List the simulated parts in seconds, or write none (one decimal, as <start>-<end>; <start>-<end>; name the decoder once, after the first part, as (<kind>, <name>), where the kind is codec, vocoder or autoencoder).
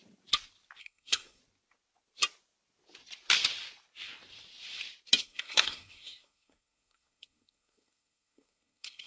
0.8-1.4 (codec, SNAC); 5.2-9.1